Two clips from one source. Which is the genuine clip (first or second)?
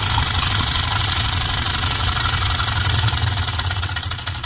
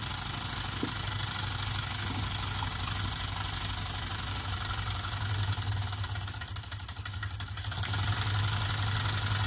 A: second